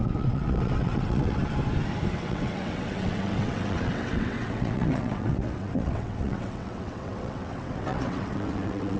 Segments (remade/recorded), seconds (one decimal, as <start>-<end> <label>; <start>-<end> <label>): 0.0-1.4 remade; 1.4-2.1 recorded; 2.1-9.0 remade